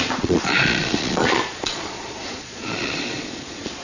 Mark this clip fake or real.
fake